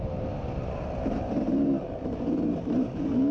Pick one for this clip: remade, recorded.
remade